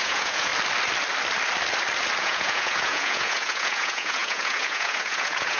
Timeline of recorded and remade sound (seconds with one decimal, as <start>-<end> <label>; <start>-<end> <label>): 0.0-0.5 remade; 0.5-2.2 recorded; 2.2-5.6 remade